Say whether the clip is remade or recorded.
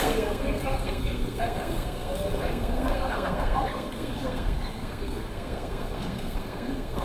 remade